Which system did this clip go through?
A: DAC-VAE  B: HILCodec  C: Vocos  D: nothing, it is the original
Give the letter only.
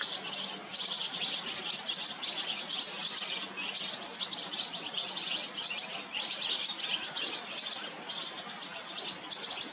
D